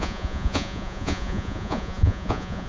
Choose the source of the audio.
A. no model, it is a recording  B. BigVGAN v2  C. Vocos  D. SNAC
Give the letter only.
C